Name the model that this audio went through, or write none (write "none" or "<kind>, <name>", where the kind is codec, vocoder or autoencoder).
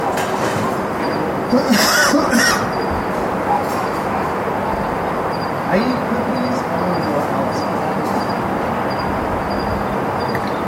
none